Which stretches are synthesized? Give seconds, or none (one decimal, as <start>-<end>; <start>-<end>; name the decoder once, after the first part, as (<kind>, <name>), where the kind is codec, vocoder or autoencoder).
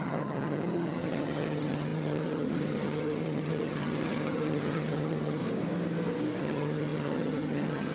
0.0-5.4 (vocoder, HiFi-GAN); 6.4-7.9